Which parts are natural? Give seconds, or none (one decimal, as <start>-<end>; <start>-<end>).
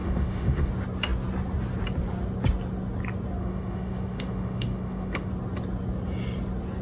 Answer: 0.7-3.4; 5.3-6.8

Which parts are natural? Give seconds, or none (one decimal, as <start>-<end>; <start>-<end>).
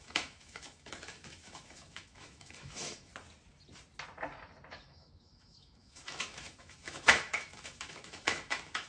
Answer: 3.1-4.7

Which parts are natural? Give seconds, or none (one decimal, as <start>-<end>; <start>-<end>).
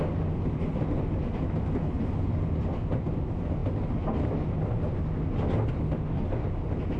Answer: 0.0-7.0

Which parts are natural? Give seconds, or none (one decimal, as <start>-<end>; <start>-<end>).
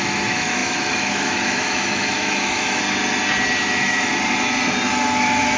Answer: 2.8-3.6; 4.1-4.9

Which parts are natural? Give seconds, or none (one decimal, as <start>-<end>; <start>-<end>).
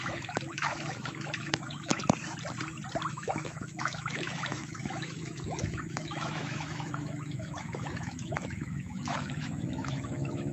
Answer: 2.0-3.1